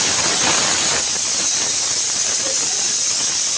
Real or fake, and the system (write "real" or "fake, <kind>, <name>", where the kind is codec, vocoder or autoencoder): real